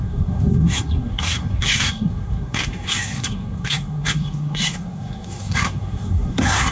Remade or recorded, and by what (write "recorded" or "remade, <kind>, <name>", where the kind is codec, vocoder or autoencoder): remade, codec, SNAC